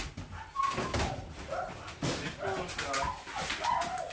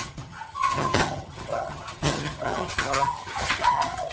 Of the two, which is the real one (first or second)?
first